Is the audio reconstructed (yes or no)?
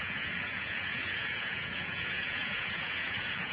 yes